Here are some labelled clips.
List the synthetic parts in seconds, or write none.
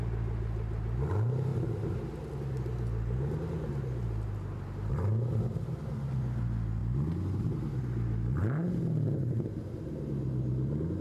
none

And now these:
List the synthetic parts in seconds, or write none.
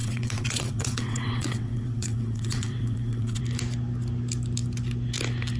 0.0-3.4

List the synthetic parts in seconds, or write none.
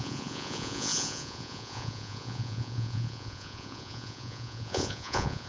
0.0-5.5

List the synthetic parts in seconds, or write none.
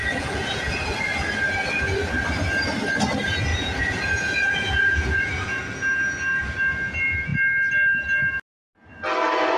0.0-0.9; 3.5-5.6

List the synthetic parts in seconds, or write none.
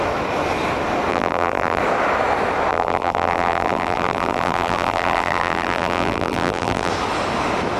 1.1-1.8; 2.7-6.9